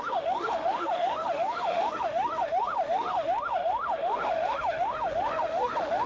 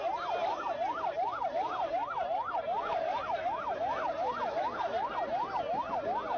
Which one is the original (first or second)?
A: second